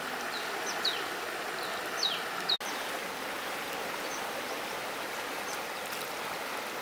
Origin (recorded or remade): recorded